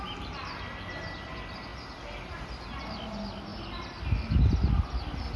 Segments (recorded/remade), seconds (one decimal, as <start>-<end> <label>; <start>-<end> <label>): 0.0-5.4 recorded